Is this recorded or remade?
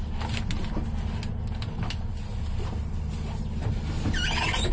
recorded